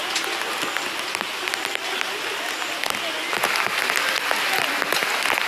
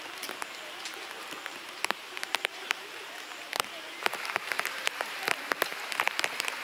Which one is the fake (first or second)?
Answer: second